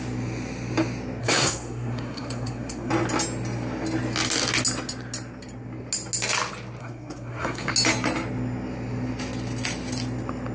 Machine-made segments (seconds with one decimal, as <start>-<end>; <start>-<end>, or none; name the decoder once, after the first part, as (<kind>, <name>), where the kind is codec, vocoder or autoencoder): 1.2-2.9 (codec, SNAC); 6.8-7.7